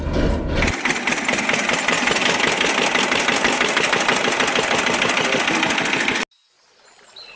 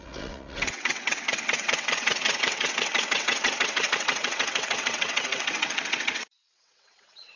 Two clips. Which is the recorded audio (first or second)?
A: first